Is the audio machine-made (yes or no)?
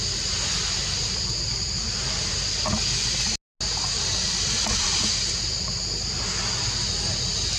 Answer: no